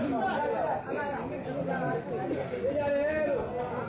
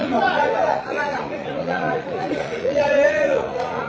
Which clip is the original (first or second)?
first